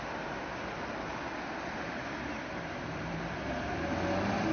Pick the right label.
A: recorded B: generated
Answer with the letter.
A